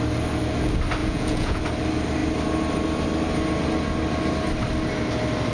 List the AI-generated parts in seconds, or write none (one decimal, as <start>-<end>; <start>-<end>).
1.0-1.6